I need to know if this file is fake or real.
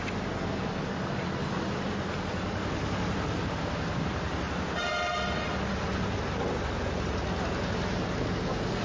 real